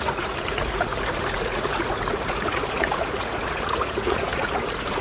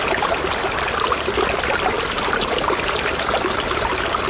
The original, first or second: second